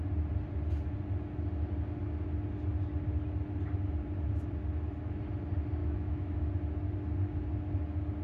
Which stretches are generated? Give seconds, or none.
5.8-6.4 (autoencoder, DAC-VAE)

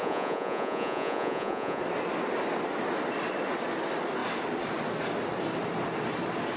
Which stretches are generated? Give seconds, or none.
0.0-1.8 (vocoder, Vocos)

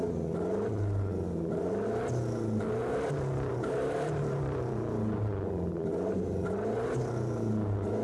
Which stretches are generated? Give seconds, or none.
1.1-1.7 (vocoder, BigVGAN v2); 3.5-7.5